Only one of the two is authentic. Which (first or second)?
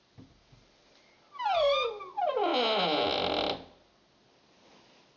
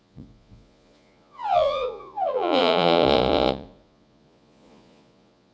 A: first